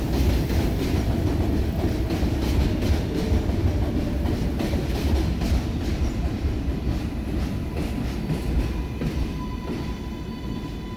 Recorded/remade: recorded